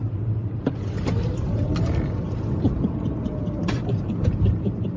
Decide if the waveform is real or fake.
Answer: real